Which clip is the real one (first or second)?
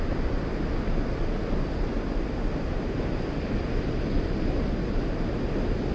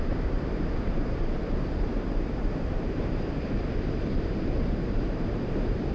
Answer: first